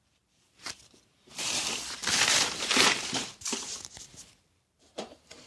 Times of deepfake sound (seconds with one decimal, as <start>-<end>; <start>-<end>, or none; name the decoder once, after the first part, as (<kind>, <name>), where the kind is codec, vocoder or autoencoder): 0.0-5.5 (vocoder, BigVGAN v2)